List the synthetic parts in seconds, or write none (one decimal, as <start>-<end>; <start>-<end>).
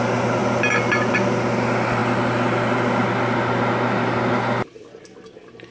none